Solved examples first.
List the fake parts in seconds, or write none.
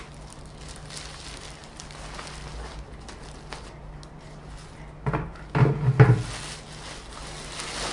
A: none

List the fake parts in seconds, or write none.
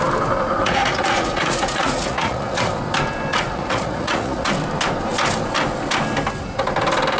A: 0.6-2.7 (vocoder, Vocos); 3.3-4.5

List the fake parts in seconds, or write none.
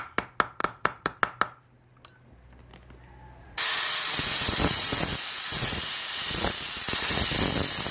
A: 0.6-1.2 (vocoder, Vocos); 3.4-7.2